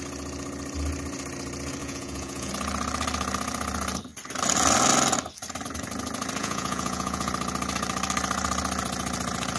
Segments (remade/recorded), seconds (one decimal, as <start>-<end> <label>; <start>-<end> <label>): 0.0-1.8 recorded; 1.8-2.5 remade; 2.5-6.4 recorded; 6.4-7.3 remade; 7.3-9.6 recorded